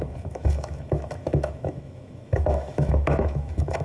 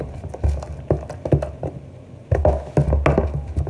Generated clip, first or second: first